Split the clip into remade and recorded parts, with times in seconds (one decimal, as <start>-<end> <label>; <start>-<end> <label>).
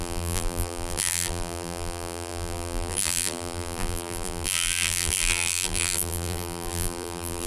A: 0.0-7.5 remade